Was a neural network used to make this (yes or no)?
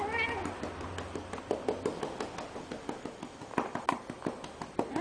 no